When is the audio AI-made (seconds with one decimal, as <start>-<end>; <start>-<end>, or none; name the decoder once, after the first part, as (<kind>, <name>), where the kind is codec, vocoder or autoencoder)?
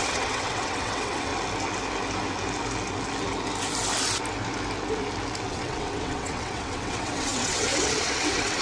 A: 0.0-1.3 (vocoder, WaveNeXt); 5.5-8.6